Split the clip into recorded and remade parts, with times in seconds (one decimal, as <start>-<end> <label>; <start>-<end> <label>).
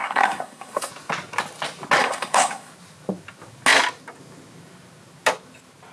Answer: 0.0-0.9 remade; 0.9-2.0 recorded; 2.0-2.7 remade; 2.7-5.9 recorded